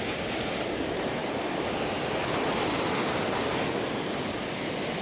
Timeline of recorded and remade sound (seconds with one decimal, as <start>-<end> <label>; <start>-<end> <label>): 0.0-5.0 recorded